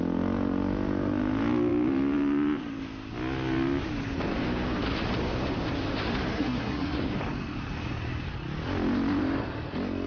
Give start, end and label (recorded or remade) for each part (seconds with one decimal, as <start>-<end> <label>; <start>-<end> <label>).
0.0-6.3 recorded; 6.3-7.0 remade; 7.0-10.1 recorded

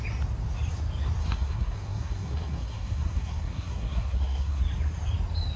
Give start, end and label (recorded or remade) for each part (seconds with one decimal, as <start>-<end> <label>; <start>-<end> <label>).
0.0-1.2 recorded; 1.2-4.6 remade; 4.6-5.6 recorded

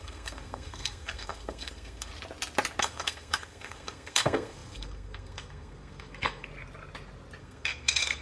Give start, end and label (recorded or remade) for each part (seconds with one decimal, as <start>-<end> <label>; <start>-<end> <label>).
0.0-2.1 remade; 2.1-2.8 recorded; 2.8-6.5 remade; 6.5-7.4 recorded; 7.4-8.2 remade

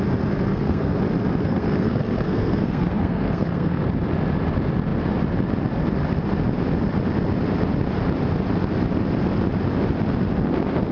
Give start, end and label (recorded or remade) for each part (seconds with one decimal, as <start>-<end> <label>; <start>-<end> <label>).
0.0-0.5 recorded; 0.5-1.0 remade; 1.0-1.4 recorded; 1.4-3.8 remade; 3.8-10.9 recorded

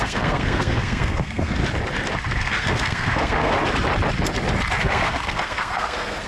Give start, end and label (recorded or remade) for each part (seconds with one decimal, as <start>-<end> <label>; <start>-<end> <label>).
0.0-1.6 remade; 1.6-2.4 recorded; 2.4-3.6 remade; 3.6-4.8 recorded; 4.8-6.3 remade

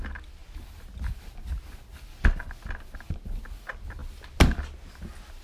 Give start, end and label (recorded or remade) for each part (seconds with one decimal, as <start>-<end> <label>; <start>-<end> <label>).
0.0-5.4 recorded